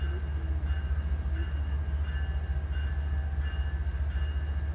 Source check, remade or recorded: recorded